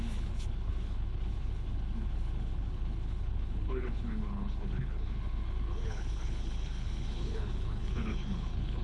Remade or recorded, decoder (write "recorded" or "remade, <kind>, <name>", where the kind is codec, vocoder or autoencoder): remade, codec, HILCodec